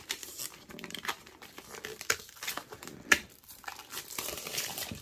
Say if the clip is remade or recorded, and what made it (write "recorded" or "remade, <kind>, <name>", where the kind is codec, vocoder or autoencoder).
remade, vocoder, BigVGAN v2